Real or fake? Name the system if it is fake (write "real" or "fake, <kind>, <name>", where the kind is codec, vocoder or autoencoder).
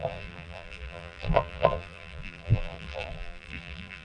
fake, vocoder, BigVGAN v2